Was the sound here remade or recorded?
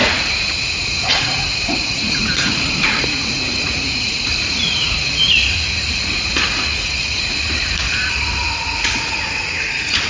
remade